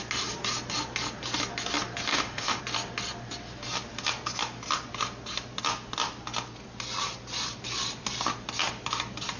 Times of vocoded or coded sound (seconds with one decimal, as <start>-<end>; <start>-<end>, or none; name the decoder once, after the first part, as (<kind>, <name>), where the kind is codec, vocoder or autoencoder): 2.1-2.6 (autoencoder, DAC-VAE)